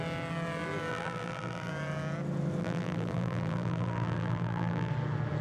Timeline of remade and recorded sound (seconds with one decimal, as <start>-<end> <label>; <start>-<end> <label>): 0.0-0.9 recorded; 0.9-1.7 remade; 1.7-2.6 recorded; 2.6-4.9 remade; 4.9-5.4 recorded